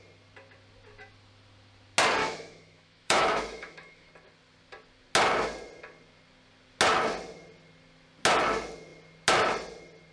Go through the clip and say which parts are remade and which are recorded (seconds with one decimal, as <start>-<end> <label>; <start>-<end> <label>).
0.0-2.2 recorded; 2.2-4.1 remade; 4.1-10.1 recorded